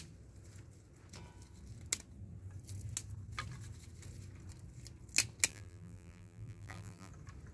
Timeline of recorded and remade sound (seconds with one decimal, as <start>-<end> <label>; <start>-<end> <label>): 0.0-5.5 recorded; 5.5-7.1 remade; 7.1-7.5 recorded